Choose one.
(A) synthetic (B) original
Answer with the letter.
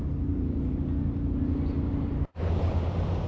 B